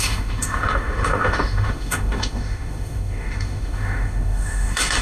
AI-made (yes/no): yes